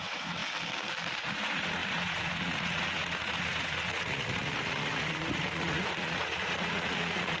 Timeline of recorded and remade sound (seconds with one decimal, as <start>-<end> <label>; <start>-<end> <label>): 0.0-0.4 remade; 0.4-1.2 recorded; 1.2-7.4 remade